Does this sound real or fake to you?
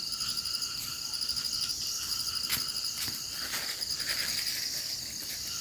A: fake